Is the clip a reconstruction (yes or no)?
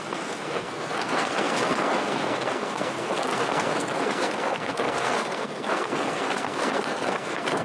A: yes